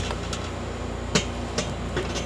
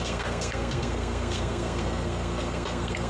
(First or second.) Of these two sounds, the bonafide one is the first